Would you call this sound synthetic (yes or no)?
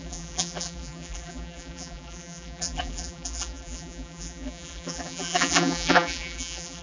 yes